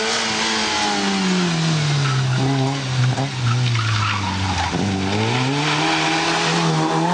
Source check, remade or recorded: recorded